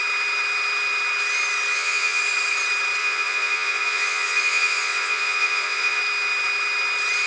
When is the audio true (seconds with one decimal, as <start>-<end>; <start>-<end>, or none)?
0.0-1.7; 2.2-3.0; 6.0-7.3